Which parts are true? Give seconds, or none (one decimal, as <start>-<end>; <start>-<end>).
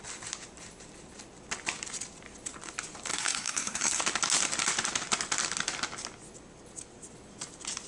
0.0-3.1; 4.0-7.9